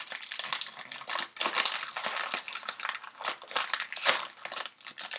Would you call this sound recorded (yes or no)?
yes